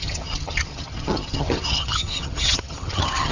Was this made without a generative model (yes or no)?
no